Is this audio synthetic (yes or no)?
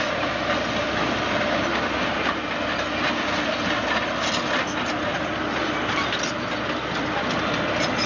no